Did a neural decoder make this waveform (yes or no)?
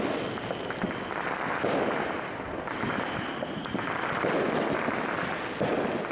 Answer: no